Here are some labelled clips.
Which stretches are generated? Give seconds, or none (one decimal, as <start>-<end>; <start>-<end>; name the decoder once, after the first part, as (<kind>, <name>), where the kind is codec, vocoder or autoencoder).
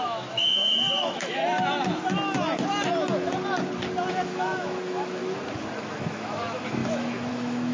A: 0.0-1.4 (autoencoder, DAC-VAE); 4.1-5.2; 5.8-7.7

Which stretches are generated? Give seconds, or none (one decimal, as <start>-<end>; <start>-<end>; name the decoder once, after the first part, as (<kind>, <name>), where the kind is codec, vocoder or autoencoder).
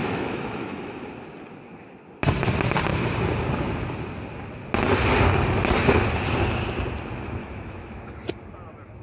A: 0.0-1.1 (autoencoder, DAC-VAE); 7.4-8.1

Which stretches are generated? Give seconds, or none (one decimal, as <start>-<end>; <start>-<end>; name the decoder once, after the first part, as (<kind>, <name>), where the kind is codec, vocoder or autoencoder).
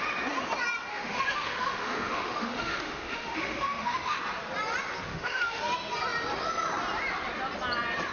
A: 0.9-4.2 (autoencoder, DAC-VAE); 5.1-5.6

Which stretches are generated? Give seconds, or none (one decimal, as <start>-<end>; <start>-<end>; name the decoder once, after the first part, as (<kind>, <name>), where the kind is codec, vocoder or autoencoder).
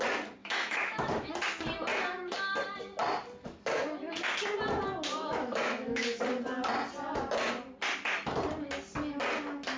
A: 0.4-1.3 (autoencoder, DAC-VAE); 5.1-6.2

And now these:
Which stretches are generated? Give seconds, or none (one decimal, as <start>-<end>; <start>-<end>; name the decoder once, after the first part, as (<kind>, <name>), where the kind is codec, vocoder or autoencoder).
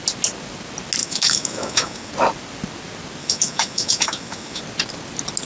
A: 1.0-2.1 (autoencoder, DAC-VAE); 3.2-4.6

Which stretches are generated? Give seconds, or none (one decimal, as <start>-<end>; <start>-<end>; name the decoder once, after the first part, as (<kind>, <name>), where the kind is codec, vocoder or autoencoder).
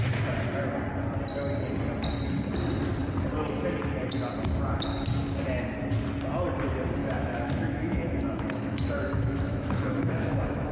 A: 7.0-10.7 (autoencoder, DAC-VAE)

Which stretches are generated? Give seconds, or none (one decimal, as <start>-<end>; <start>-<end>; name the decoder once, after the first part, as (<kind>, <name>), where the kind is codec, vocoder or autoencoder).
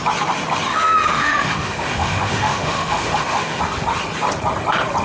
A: 0.7-3.6 (autoencoder, DAC-VAE)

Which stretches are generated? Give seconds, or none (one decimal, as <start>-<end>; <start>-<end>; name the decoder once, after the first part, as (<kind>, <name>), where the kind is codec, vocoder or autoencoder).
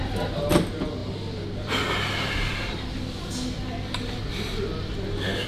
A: none